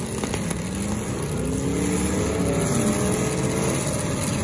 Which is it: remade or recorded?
recorded